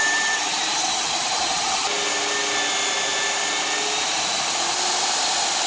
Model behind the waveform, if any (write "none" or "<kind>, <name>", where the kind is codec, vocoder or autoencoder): none